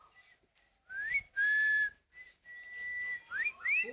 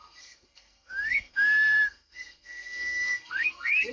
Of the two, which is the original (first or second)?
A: first